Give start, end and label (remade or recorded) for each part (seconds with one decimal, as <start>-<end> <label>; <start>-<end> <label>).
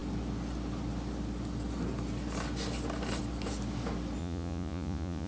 0.0-4.2 recorded; 4.2-5.3 remade